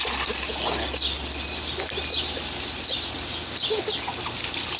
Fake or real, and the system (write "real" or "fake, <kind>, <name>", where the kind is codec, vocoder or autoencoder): real